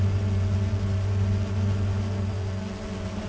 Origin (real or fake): real